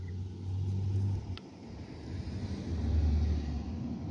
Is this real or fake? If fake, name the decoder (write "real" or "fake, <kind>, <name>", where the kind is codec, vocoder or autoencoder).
real